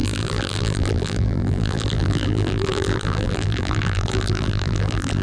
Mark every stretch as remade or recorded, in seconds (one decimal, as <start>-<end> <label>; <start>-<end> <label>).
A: 0.0-5.2 remade